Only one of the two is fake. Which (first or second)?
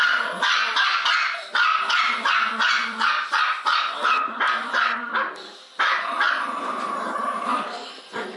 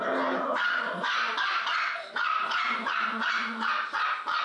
second